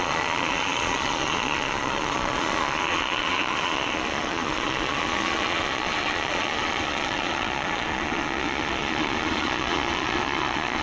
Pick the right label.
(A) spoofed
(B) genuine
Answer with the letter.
A